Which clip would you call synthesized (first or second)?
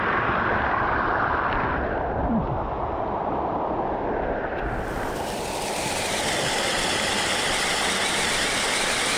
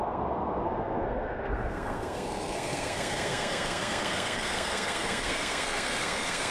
second